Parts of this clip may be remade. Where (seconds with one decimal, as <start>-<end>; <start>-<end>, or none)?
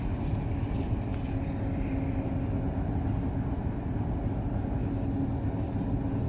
none